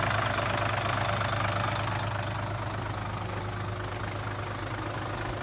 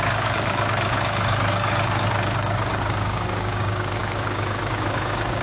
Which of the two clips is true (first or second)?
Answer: first